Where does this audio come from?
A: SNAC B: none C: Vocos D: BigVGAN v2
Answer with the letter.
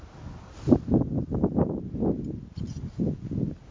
B